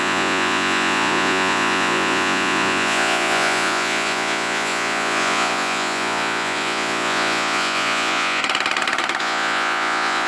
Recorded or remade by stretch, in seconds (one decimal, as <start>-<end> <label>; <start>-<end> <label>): 0.0-8.4 remade; 8.4-9.2 recorded; 9.2-10.3 remade